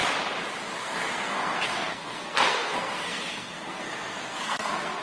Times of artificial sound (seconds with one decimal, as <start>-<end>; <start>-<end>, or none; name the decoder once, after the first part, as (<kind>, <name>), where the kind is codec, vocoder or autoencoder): 0.8-5.0 (codec, SNAC)